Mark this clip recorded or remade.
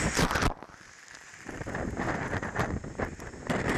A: remade